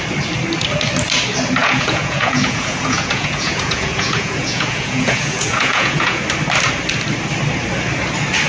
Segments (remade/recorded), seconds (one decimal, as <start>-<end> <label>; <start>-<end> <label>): 0.0-1.6 recorded; 1.6-6.2 remade; 6.2-8.5 recorded